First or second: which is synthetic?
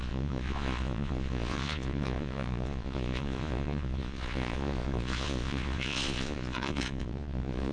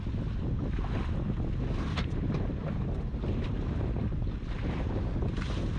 first